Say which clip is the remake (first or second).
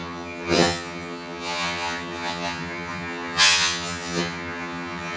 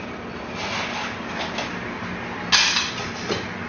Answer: first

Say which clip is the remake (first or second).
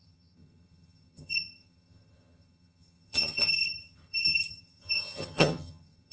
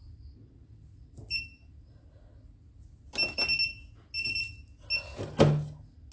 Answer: first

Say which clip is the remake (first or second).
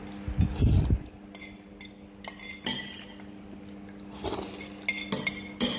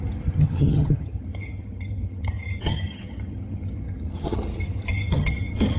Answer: second